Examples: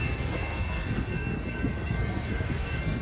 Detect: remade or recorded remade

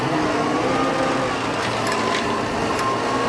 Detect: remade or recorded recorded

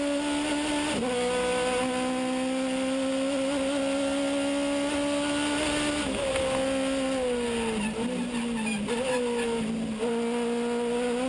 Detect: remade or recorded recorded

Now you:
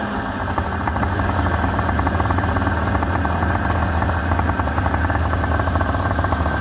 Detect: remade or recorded remade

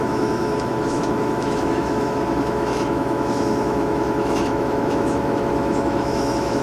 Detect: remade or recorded remade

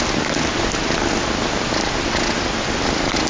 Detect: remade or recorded recorded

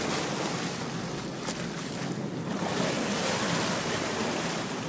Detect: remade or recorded recorded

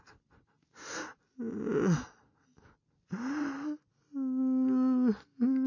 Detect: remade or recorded recorded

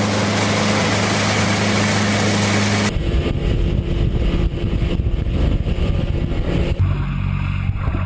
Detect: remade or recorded recorded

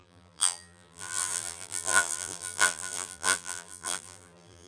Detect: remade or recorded remade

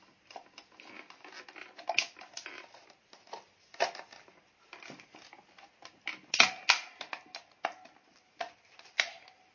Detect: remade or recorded recorded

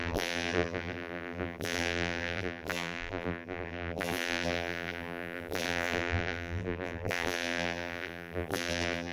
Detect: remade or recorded remade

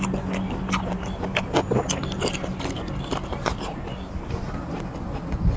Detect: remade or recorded recorded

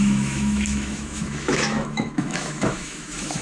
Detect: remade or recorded remade